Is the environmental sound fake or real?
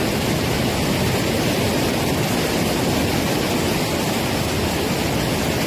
real